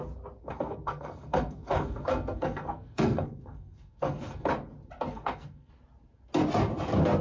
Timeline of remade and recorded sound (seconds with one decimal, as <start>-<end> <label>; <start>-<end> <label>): 0.0-0.4 recorded; 0.4-4.5 remade; 4.5-5.1 recorded; 5.1-5.7 remade; 5.7-7.2 recorded